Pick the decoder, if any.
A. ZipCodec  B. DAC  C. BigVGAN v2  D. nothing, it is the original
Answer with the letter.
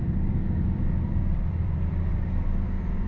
C